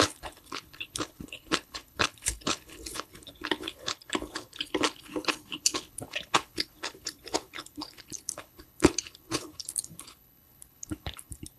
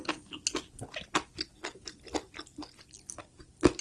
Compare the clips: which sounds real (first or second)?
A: second